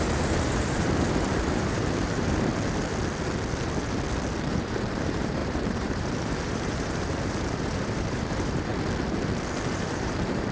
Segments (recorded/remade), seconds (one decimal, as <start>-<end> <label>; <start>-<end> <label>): 0.0-2.5 remade; 2.5-4.5 recorded; 4.5-8.7 remade; 8.7-9.7 recorded; 9.7-10.5 remade